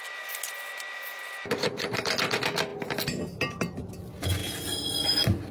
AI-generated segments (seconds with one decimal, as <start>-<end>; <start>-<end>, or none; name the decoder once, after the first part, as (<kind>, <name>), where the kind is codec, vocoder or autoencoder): none